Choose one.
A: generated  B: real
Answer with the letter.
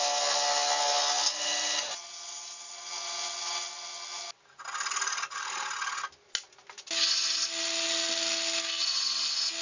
B